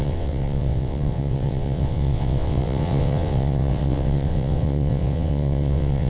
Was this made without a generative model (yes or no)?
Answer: no